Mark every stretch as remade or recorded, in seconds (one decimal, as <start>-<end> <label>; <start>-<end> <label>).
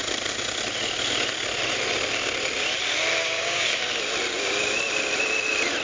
0.0-3.2 recorded; 3.2-3.8 remade; 3.8-5.8 recorded